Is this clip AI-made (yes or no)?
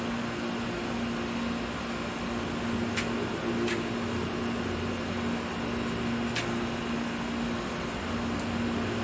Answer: no